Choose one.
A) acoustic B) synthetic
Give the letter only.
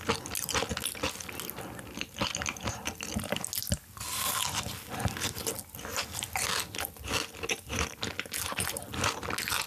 A